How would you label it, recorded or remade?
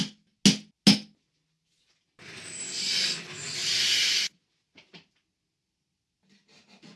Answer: recorded